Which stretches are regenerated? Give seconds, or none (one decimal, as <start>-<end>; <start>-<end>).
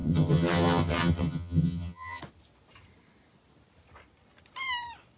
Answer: 0.0-2.2